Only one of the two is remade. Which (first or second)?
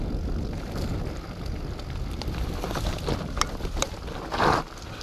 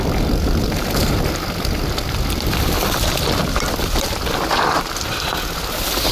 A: second